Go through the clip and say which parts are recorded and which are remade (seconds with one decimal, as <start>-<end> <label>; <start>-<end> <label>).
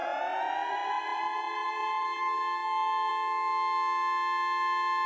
0.0-5.1 recorded